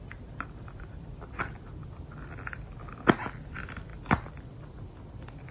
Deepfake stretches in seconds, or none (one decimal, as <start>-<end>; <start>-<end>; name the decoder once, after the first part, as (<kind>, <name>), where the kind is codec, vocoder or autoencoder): 0.0-1.8 (vocoder, BigVGAN v2); 3.4-3.9; 5.1-5.5

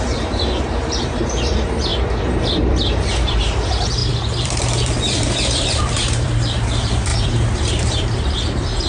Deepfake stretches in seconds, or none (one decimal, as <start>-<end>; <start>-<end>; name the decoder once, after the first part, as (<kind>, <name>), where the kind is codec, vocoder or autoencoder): 0.0-1.9 (vocoder, BigVGAN v2); 3.1-8.9

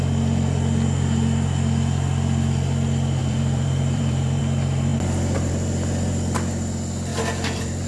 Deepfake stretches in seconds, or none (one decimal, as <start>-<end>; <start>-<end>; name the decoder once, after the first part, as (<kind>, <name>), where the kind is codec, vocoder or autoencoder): 3.2-4.4 (vocoder, BigVGAN v2); 7.1-7.9

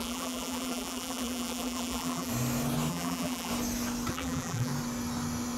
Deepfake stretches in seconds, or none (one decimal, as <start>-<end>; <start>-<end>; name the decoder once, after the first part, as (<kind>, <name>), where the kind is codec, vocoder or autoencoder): 0.0-2.3 (vocoder, BigVGAN v2); 2.9-3.5; 4.1-4.7